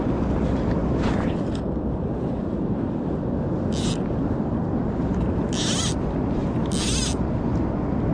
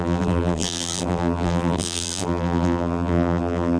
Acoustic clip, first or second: first